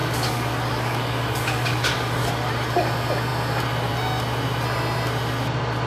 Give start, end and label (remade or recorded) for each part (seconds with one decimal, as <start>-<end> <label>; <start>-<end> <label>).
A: 0.0-2.5 remade; 2.5-5.9 recorded